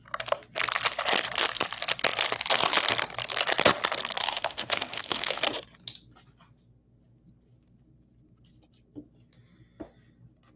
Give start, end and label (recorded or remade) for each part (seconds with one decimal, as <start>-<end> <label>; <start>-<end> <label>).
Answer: 0.0-4.2 recorded; 4.2-5.4 remade; 5.4-10.6 recorded